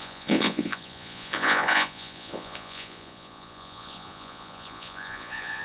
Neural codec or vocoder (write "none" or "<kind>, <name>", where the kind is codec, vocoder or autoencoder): vocoder, Vocos